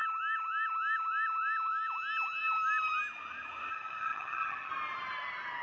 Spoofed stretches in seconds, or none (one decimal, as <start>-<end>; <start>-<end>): 3.7-4.7